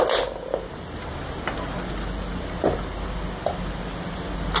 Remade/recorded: recorded